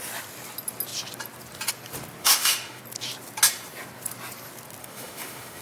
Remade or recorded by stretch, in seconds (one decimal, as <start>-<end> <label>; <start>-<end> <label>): 0.0-2.2 recorded; 2.2-2.8 remade; 2.8-4.8 recorded; 4.8-5.6 remade